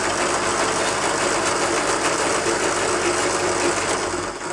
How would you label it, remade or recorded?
recorded